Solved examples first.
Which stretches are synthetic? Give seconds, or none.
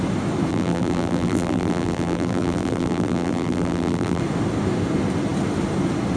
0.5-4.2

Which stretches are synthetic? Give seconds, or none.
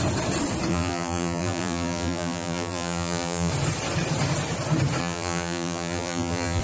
0.7-3.5; 5.0-6.6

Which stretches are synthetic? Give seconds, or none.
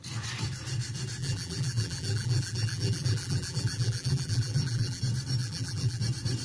1.2-5.0; 5.4-6.0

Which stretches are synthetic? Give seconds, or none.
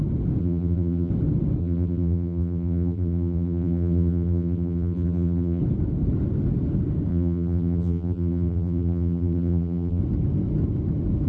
0.4-1.1; 1.6-5.6; 7.1-10.0